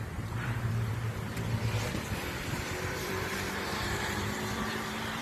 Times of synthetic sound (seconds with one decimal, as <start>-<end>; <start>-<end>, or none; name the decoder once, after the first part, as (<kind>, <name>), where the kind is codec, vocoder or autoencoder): 0.0-0.9 (vocoder, BigVGAN v2); 2.9-5.2